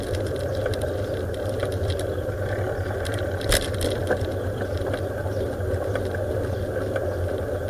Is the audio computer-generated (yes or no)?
no